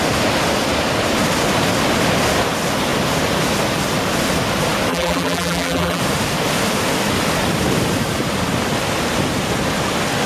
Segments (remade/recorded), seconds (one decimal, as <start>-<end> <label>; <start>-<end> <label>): 0.0-4.9 recorded; 4.9-6.0 remade; 6.0-10.3 recorded